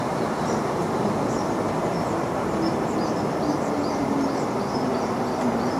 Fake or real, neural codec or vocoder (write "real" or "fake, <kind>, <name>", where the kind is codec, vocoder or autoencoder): real